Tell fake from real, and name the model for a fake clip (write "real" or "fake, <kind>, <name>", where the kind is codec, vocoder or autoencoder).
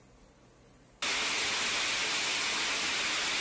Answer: real